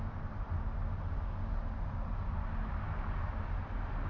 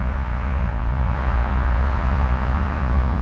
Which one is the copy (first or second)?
second